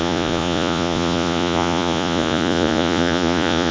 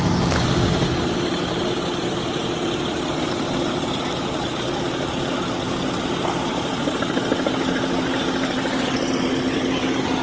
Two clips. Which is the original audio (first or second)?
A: second